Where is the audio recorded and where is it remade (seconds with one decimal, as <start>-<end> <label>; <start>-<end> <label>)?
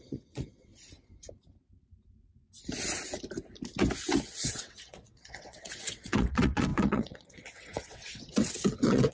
0.0-0.7 remade; 0.7-4.2 recorded; 4.2-9.1 remade